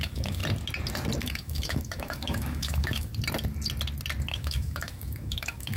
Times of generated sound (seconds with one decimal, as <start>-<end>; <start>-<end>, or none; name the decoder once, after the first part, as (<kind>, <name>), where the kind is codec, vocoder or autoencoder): 0.0-0.4 (autoencoder, DAC-VAE); 1.2-3.1; 4.3-5.8